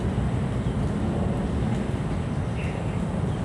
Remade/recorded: recorded